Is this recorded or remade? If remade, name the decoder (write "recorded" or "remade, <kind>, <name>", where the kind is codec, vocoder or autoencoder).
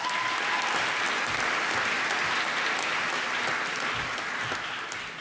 recorded